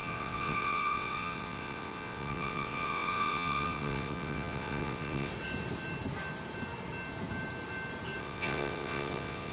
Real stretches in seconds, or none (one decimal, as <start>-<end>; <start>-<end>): 5.3-8.2